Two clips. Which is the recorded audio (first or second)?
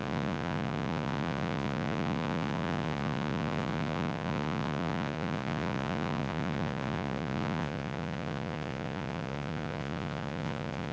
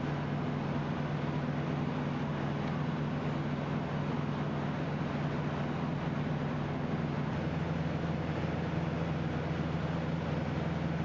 second